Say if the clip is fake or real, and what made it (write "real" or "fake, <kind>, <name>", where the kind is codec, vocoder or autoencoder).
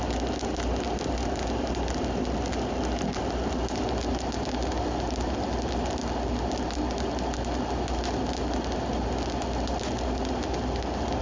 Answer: real